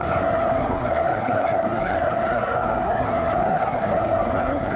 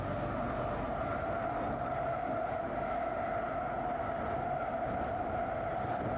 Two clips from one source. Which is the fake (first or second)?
first